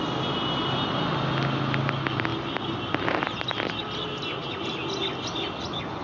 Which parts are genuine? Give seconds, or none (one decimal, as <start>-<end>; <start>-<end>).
0.0-6.0